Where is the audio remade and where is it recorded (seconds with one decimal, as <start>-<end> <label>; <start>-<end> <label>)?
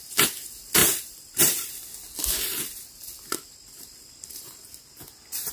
0.0-5.5 recorded